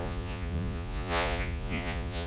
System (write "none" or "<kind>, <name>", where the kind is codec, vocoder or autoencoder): vocoder, Vocos